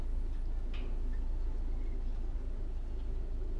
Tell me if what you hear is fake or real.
real